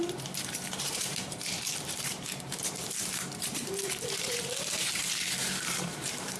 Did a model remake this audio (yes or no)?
yes